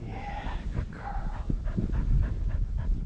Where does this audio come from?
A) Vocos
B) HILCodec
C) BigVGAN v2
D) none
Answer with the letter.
D